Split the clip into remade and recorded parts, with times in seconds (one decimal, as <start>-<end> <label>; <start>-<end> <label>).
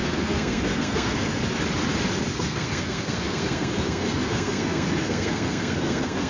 0.0-1.4 remade; 1.4-2.3 recorded; 2.3-6.3 remade